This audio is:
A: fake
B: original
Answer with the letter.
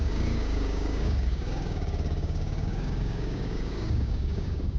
A